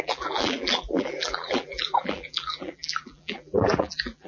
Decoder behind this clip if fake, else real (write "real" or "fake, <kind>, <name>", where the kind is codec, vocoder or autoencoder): fake, vocoder, BigVGAN v2